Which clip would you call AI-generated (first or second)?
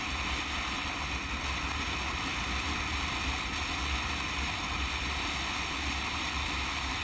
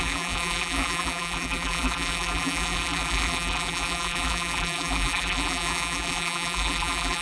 second